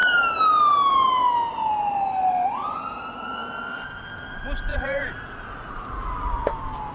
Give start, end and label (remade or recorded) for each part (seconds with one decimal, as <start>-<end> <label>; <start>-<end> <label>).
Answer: 0.0-4.7 recorded; 4.7-6.5 remade; 6.5-6.9 recorded